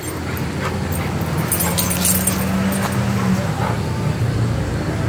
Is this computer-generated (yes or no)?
no